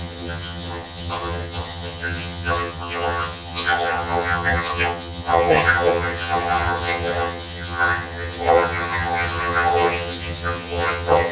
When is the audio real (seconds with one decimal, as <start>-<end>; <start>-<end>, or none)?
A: none